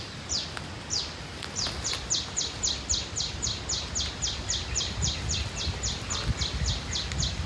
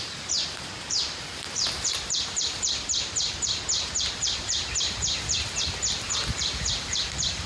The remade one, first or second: second